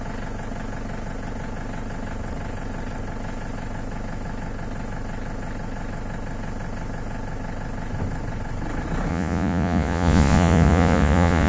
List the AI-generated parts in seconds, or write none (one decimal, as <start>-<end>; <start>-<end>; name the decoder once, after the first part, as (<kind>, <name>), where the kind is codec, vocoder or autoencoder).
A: 9.1-11.5 (vocoder, Vocos)